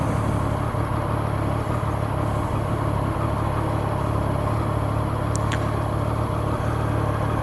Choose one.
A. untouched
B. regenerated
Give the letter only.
A